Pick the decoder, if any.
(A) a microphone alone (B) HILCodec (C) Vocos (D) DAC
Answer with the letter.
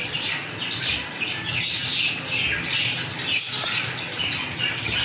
A